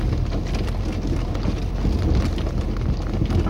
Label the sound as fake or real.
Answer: real